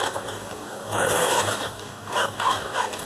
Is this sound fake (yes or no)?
yes